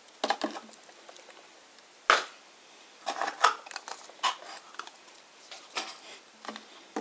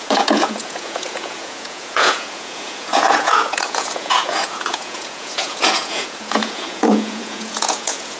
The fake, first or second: second